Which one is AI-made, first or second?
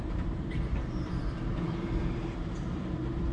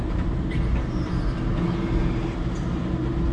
first